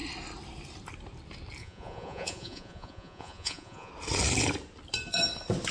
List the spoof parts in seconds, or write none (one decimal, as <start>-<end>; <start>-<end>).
1.6-3.9